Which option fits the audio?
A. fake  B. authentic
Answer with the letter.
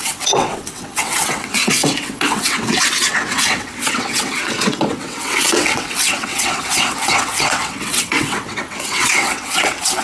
A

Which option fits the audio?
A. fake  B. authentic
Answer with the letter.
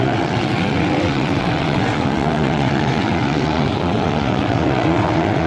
A